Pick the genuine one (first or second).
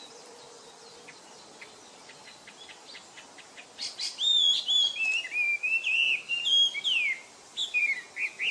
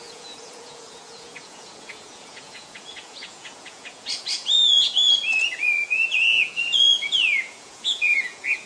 first